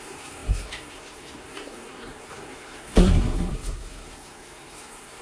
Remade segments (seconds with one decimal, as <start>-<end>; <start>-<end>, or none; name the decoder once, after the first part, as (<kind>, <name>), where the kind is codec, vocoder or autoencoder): 0.0-5.2 (codec, SNAC)